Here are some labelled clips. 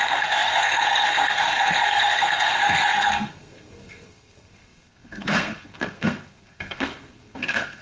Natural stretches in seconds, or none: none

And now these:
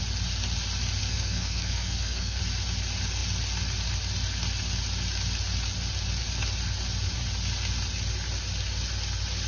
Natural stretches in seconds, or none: 0.0-1.0; 2.4-9.5

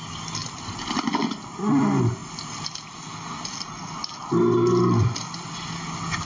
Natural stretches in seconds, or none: 0.0-6.3

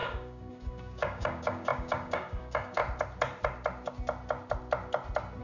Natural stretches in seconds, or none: 2.8-5.4